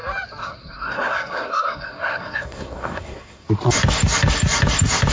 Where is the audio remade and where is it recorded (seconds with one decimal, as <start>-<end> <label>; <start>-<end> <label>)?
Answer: 0.0-0.4 recorded; 0.4-3.5 remade; 3.5-5.1 recorded